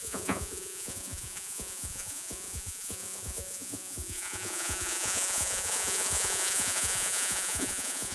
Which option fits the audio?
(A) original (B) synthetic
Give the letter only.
B